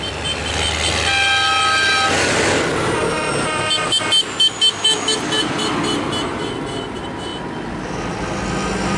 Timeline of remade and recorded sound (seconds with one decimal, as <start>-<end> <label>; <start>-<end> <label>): 0.0-9.0 recorded